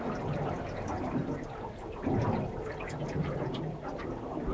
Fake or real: real